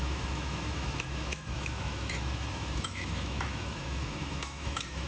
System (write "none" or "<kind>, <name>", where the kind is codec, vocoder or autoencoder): autoencoder, DAC-VAE